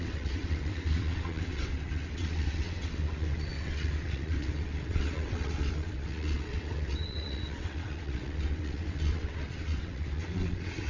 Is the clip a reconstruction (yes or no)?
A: yes